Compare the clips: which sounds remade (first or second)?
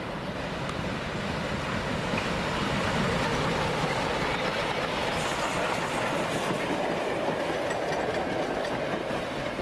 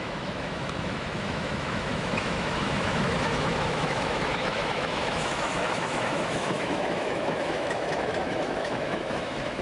second